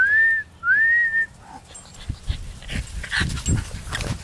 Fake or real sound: real